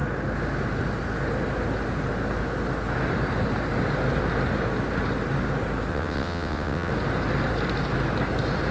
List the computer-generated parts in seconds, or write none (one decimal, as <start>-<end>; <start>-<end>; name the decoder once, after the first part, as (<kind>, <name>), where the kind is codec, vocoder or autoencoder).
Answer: 5.9-6.9 (vocoder, WaveNeXt)